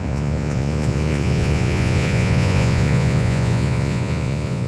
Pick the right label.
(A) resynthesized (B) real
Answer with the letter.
A